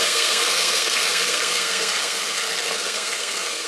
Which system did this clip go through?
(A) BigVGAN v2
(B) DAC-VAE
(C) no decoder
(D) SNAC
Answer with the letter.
D